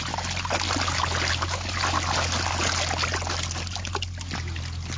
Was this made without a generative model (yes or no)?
yes